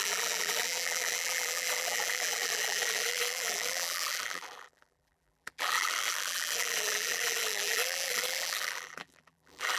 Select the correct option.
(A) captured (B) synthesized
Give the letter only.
B